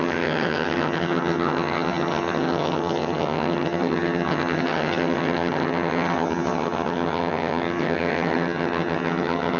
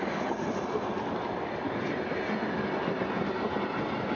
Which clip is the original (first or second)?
second